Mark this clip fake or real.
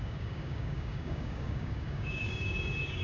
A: fake